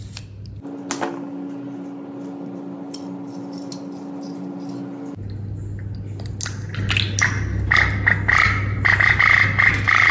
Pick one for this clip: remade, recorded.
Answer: recorded